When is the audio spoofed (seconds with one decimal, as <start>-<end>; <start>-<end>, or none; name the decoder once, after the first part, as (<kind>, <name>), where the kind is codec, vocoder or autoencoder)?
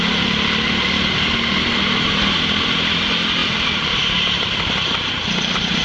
none